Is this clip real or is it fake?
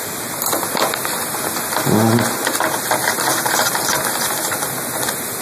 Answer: real